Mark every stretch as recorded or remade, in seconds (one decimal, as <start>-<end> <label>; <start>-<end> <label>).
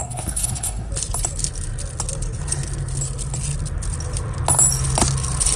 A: 0.0-0.9 remade; 0.9-5.6 recorded